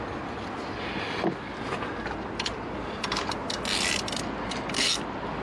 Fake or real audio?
real